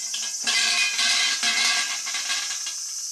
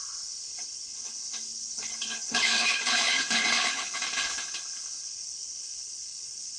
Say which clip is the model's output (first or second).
second